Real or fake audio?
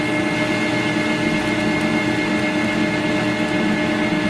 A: real